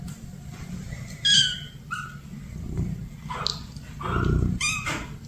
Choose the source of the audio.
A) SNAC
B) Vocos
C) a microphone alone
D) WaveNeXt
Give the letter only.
C